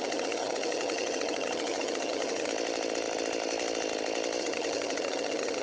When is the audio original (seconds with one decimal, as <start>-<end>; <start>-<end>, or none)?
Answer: 2.5-4.4